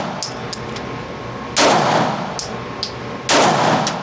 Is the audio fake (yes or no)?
no